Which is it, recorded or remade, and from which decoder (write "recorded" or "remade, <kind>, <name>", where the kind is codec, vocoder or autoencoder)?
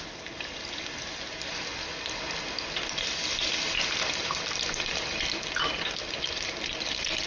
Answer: recorded